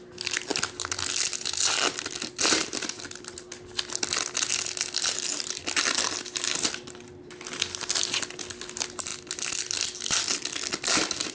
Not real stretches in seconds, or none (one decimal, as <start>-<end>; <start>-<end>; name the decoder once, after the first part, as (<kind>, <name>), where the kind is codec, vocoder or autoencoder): none